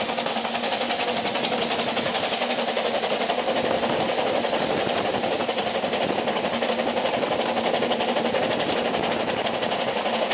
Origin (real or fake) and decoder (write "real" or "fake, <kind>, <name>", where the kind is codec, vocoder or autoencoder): real